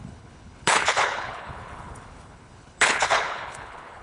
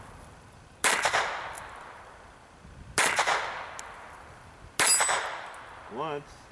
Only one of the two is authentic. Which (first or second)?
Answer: second